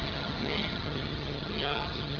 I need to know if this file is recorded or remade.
remade